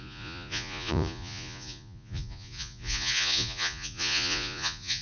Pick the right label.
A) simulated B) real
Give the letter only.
A